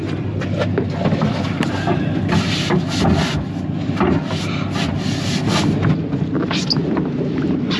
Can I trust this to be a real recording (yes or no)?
yes